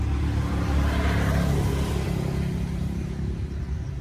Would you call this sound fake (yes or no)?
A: no